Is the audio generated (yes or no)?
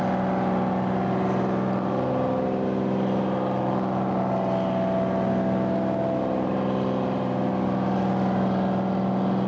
no